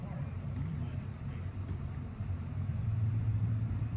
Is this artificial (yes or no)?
yes